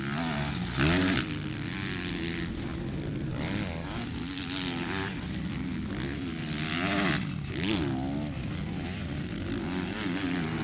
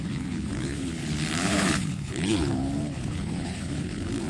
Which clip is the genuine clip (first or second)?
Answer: first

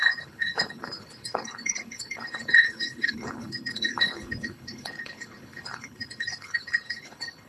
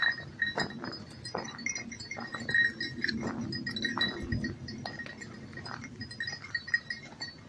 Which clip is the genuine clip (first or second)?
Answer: second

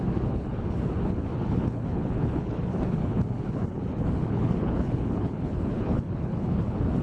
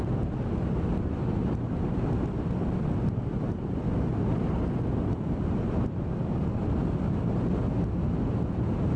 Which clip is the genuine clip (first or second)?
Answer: second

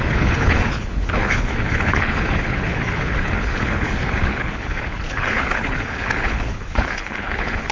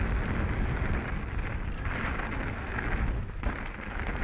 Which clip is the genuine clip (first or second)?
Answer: second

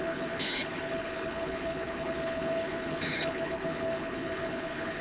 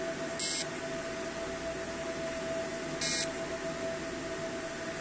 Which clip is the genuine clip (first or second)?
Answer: second